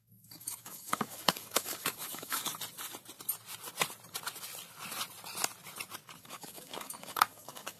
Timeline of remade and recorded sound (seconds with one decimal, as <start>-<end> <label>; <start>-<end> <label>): 0.0-2.5 remade; 2.5-6.2 recorded; 6.2-7.8 remade